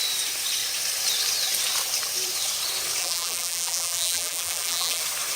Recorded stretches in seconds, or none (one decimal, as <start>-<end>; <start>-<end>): 0.0-3.0; 5.0-5.4